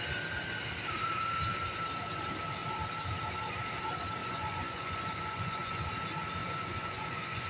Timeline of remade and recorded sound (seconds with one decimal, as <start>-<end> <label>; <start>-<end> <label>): 0.0-4.2 recorded; 4.2-5.8 remade; 5.8-6.4 recorded; 6.4-7.5 remade